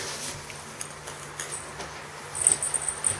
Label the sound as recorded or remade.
recorded